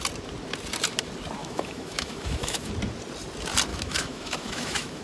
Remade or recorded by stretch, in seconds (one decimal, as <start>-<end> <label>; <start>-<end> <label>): 0.0-1.4 recorded; 1.4-2.7 remade; 2.7-3.7 recorded; 3.7-5.0 remade